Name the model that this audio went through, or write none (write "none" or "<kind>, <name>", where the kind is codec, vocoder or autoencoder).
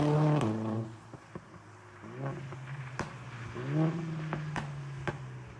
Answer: none